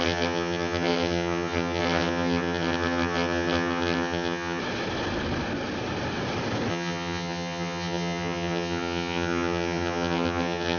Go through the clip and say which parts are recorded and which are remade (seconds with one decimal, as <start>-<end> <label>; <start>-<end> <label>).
0.0-4.6 remade; 4.6-6.7 recorded; 6.7-10.8 remade